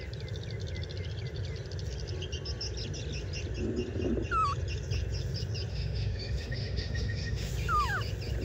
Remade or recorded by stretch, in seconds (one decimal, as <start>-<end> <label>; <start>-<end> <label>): 0.0-5.7 recorded; 5.7-7.5 remade; 7.5-8.4 recorded

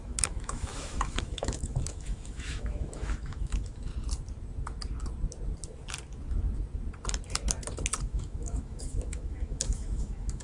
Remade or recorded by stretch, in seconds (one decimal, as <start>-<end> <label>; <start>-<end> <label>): 0.0-3.9 remade; 3.9-8.0 recorded; 8.0-10.4 remade

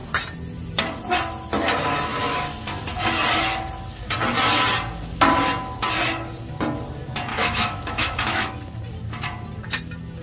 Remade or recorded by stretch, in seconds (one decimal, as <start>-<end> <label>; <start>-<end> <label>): 0.0-7.3 recorded; 7.3-8.5 remade; 8.5-10.2 recorded

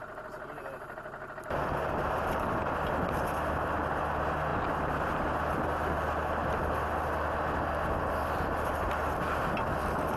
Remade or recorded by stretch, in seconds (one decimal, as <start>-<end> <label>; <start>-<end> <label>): 0.0-10.2 recorded

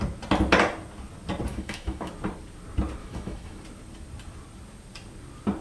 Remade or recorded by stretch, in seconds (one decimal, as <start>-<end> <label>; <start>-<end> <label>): 0.0-1.5 recorded; 1.5-2.1 remade; 2.1-3.0 recorded; 3.0-3.6 remade; 3.6-5.6 recorded

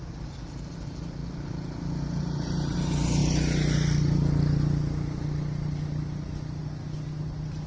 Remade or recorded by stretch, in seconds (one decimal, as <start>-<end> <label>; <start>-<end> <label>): 0.0-7.7 recorded

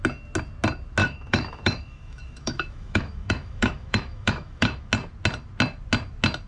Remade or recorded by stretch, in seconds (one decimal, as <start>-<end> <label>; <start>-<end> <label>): 0.0-1.0 recorded; 1.0-4.9 remade; 4.9-6.5 recorded